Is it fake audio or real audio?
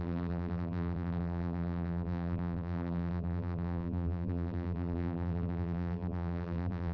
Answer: fake